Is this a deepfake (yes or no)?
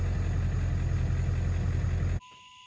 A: no